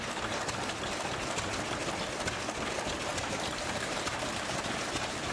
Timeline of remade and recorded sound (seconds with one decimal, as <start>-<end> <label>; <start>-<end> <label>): 0.0-3.1 recorded; 3.1-5.3 remade